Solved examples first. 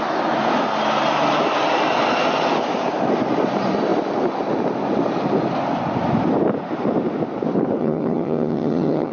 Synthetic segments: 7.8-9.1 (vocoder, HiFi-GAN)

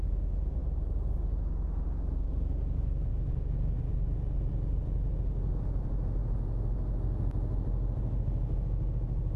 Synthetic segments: none

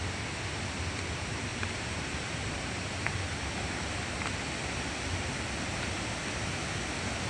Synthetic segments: 1.5-2.9 (vocoder, BigVGAN v2)

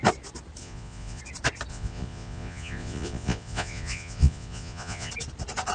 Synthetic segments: 0.6-1.2 (vocoder, Vocos); 1.7-5.1

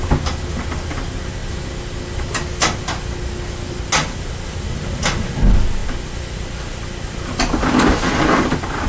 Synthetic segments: none

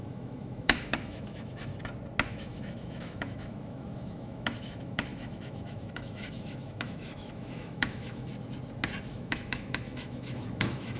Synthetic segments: 0.0-1.7 (autoencoder, DAC-VAE); 2.3-8.3; 9.1-11.0

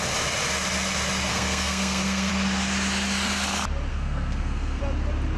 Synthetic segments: 1.3-2.3 (codec, SNAC); 3.9-4.8